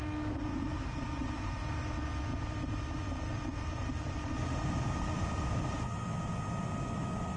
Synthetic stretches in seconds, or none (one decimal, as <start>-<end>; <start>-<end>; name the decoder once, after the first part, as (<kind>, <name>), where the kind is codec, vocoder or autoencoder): 0.5-1.6 (vocoder, BigVGAN v2); 2.3-4.1